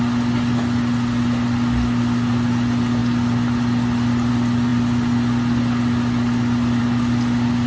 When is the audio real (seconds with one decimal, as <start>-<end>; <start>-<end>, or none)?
0.0-7.7